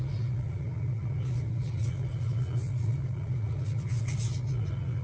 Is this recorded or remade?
remade